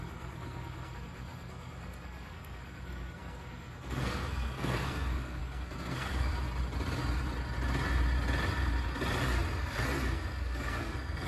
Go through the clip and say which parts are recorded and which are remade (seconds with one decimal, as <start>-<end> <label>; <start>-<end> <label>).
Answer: 0.0-6.3 remade; 6.3-9.6 recorded; 9.6-11.3 remade